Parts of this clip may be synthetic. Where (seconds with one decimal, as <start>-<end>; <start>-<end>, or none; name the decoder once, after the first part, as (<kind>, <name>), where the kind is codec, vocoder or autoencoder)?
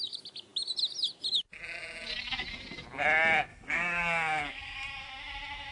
3.5-5.0 (codec, DAC)